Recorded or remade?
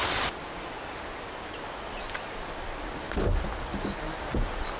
recorded